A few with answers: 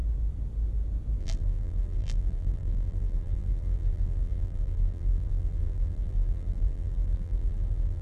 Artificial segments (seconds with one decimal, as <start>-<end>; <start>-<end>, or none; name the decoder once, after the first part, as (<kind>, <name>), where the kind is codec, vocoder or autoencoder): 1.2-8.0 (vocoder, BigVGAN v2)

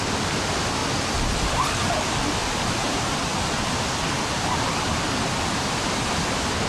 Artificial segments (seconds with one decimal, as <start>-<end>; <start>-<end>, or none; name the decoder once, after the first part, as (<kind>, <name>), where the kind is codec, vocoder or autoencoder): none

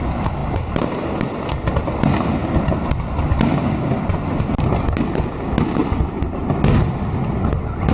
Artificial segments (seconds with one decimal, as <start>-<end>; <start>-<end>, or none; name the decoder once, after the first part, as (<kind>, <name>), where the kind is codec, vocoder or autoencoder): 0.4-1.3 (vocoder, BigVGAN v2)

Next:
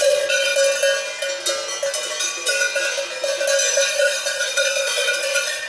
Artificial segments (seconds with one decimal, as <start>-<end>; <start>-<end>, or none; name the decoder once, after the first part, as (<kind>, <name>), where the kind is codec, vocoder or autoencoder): 0.0-0.5 (vocoder, Vocos); 3.9-5.7

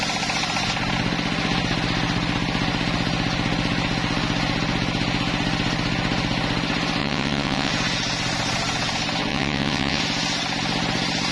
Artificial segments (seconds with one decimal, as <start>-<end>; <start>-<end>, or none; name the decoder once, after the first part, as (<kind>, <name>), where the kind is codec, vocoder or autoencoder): 7.0-7.7 (vocoder, WaveNeXt); 9.3-10.0

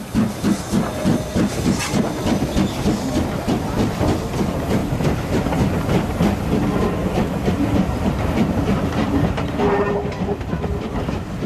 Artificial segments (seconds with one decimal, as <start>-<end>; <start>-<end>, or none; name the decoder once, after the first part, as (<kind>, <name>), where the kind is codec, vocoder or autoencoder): 1.1-1.8 (vocoder, BigVGAN v2); 4.8-5.4; 7.0-9.5

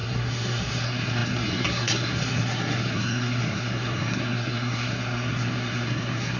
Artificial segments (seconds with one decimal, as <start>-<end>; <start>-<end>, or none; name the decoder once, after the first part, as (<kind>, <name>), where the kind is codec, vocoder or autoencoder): 0.0-6.4 (codec, SNAC)

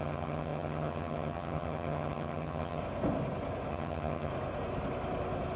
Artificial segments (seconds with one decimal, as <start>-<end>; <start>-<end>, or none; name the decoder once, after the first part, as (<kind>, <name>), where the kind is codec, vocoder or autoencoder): 0.0-2.8 (vocoder, HiFi-GAN); 3.7-4.3